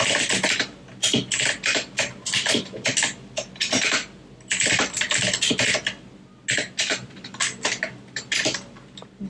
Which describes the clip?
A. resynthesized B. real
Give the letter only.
B